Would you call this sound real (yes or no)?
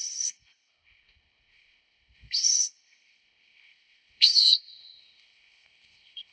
no